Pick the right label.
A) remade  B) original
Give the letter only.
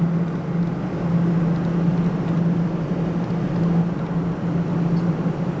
B